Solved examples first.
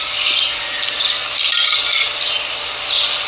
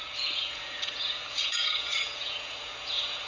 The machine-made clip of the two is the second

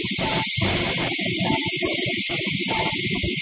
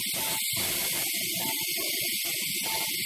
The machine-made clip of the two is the first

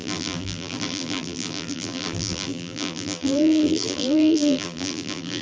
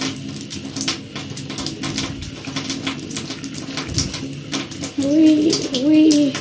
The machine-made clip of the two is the first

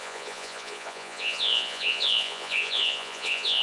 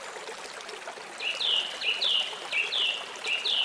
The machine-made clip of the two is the first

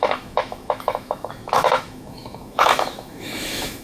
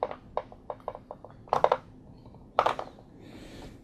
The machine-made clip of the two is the first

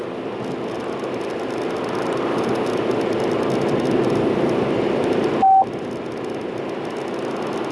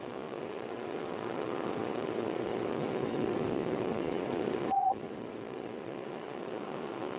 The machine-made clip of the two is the second